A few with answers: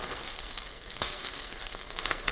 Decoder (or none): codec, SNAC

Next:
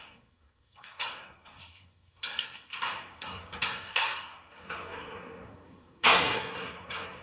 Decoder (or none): codec, SNAC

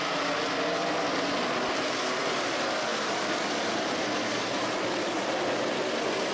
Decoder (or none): none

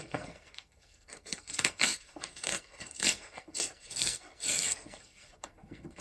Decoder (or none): codec, SNAC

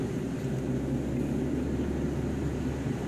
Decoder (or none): none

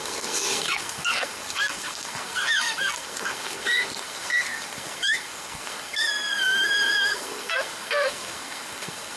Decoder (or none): codec, SNAC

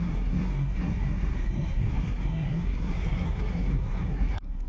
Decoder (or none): codec, SNAC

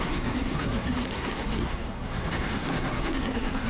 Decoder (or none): codec, SNAC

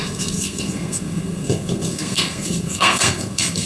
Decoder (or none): codec, SNAC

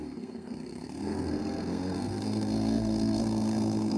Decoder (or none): codec, SNAC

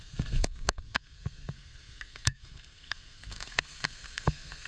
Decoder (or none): codec, SNAC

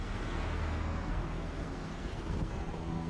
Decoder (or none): codec, SNAC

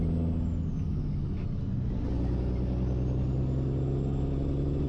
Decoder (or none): none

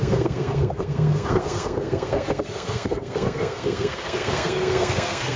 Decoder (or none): codec, SNAC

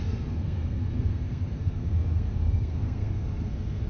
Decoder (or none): codec, SNAC